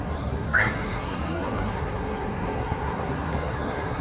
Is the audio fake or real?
fake